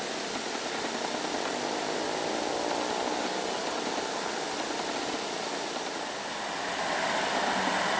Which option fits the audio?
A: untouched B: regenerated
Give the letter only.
A